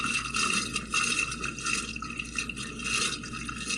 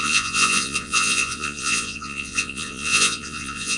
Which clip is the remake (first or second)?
second